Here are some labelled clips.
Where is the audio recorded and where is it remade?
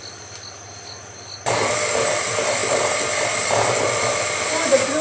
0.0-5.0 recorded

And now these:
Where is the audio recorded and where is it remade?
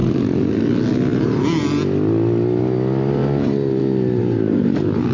0.0-0.6 remade; 0.6-1.1 recorded; 1.1-1.8 remade; 1.8-4.2 recorded; 4.2-5.1 remade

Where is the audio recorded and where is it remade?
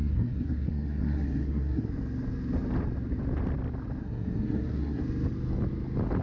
0.0-1.9 remade; 1.9-4.0 recorded; 4.0-5.0 remade; 5.0-6.2 recorded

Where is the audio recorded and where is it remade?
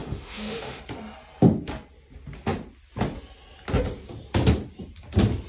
0.0-0.8 remade; 0.8-5.5 recorded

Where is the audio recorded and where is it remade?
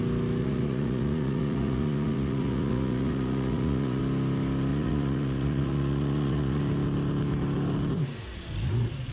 0.0-0.4 recorded; 0.4-4.0 remade; 4.0-4.7 recorded; 4.7-6.6 remade; 6.6-9.1 recorded